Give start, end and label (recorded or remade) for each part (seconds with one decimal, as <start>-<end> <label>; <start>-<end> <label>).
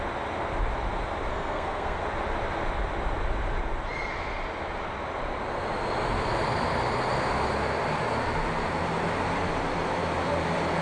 0.0-1.3 recorded; 1.3-2.0 remade; 2.0-10.8 recorded